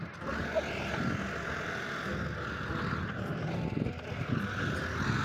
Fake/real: real